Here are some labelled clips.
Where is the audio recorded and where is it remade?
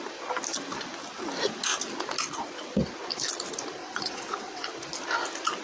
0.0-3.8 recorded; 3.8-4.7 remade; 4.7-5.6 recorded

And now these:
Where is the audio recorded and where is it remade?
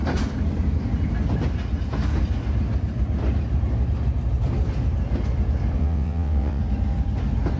0.0-5.8 recorded; 5.8-6.6 remade; 6.6-7.6 recorded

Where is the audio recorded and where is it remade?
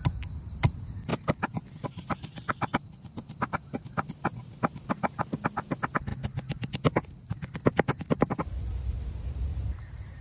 0.0-10.2 recorded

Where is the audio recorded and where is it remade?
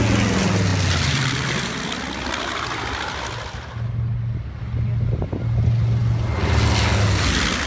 0.0-7.7 recorded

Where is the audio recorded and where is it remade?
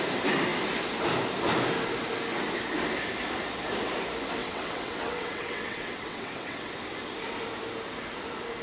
0.0-4.4 recorded; 4.4-6.7 remade; 6.7-8.6 recorded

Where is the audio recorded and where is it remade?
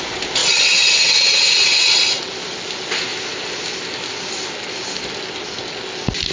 0.0-0.4 recorded; 0.4-2.2 remade; 2.2-6.3 recorded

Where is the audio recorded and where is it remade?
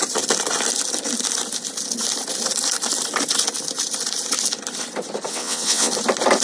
0.0-5.3 recorded; 5.3-5.9 remade; 5.9-6.4 recorded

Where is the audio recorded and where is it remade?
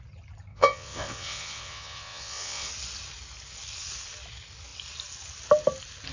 0.0-0.5 recorded; 0.5-2.7 remade; 2.7-6.1 recorded